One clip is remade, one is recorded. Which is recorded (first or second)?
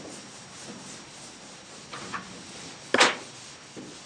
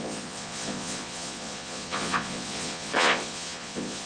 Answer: first